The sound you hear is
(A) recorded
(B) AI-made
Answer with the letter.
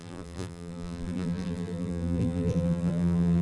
B